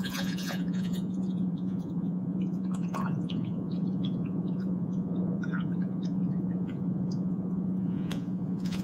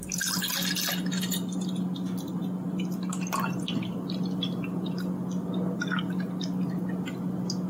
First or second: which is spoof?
first